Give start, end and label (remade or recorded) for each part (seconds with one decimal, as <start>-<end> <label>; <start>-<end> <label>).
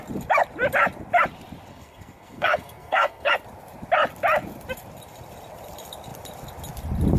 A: 0.0-1.7 recorded; 1.7-3.3 remade; 3.3-7.2 recorded